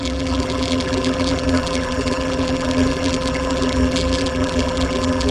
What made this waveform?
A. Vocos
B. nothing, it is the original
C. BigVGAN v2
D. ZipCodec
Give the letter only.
C